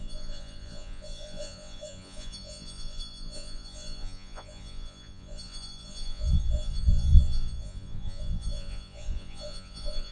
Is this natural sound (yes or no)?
no